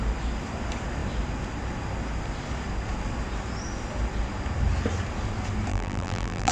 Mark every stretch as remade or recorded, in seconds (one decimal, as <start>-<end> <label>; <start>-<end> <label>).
0.0-5.7 recorded; 5.7-6.5 remade